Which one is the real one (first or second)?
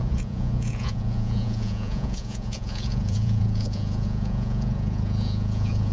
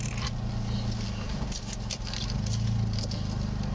second